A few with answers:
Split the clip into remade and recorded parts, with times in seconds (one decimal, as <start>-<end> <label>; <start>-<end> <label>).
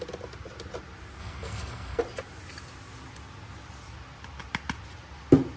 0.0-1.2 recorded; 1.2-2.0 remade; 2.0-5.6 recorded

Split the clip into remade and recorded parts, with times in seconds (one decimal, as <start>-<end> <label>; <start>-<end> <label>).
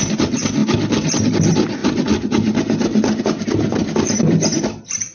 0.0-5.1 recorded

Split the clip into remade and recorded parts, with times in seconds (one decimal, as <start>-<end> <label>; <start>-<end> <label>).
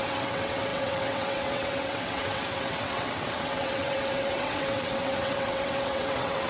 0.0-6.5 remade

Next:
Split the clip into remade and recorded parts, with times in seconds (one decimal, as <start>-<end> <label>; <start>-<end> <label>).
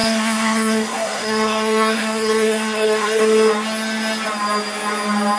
0.0-3.2 remade; 3.2-5.4 recorded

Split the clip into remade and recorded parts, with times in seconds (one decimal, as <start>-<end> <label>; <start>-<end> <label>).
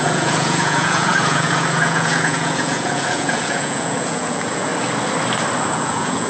0.0-4.7 remade; 4.7-5.6 recorded; 5.6-6.3 remade